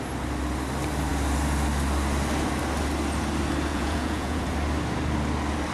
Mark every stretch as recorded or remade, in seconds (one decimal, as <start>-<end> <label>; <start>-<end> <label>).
0.0-3.7 recorded; 3.7-4.4 remade; 4.4-5.7 recorded